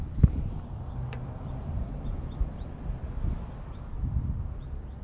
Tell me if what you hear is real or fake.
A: fake